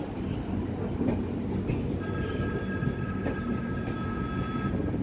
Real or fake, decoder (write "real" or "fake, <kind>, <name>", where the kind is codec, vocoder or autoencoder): real